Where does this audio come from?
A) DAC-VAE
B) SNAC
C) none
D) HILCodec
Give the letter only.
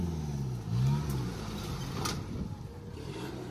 C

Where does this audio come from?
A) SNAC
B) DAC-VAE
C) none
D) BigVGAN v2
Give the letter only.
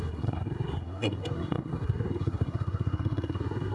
A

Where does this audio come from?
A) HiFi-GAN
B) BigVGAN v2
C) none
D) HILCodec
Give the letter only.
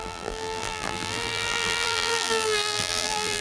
B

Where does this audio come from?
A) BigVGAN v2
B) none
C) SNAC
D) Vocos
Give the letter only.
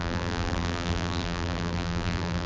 A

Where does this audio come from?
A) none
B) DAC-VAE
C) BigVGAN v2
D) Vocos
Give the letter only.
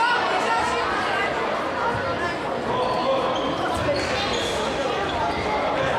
A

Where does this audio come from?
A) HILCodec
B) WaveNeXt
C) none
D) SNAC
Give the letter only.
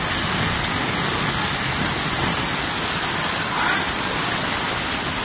C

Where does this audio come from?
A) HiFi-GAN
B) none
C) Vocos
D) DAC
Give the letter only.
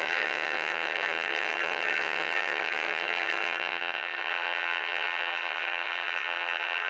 A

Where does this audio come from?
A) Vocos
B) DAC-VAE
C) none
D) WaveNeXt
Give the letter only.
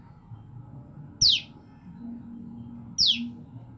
C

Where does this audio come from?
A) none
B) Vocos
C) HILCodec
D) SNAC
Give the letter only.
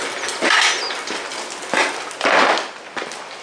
A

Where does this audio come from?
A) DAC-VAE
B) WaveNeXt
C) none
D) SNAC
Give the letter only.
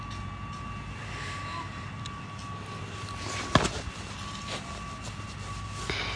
C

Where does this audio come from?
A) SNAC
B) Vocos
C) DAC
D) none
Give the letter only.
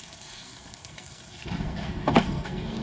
A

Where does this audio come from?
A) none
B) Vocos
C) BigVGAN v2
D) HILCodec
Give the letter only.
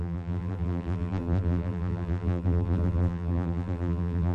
C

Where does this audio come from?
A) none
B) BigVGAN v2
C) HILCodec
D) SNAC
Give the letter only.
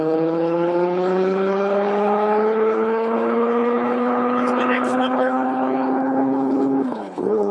C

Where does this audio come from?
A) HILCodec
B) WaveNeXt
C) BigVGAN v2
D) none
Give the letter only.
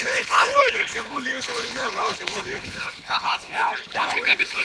A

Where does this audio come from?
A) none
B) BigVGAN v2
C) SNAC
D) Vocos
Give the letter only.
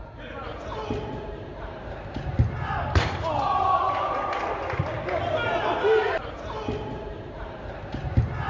A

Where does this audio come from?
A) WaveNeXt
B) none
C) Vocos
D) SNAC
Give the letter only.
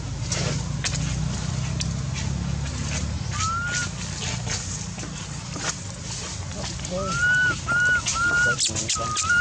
B